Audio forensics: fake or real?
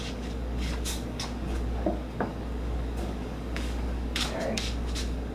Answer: fake